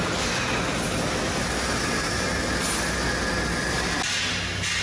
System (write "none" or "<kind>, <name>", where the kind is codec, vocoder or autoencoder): none